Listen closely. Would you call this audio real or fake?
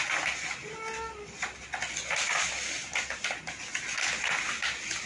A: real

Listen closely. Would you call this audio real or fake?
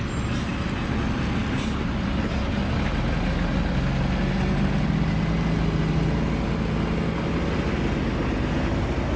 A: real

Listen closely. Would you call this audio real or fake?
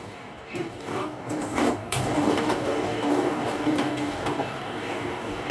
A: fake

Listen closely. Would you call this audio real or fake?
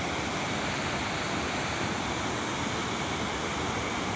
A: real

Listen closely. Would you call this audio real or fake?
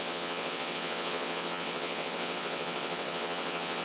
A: fake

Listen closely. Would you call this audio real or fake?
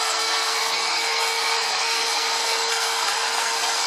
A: fake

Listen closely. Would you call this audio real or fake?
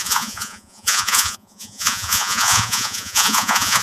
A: fake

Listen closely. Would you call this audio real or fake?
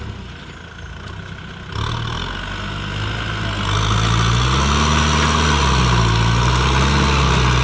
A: real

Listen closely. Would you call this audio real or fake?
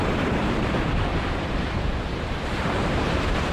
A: fake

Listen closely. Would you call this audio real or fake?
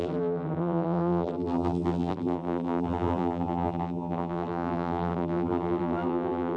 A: fake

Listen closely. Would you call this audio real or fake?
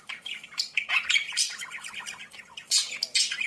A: real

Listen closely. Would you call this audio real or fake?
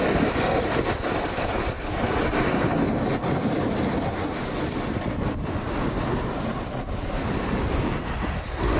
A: real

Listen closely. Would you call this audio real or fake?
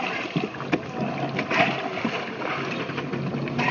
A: real